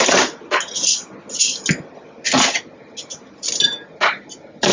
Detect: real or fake real